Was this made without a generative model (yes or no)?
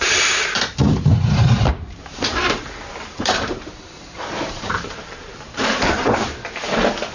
no